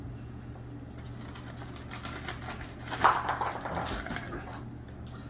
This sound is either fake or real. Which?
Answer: real